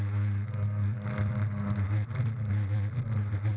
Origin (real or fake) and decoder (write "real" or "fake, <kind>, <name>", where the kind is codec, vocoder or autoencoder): real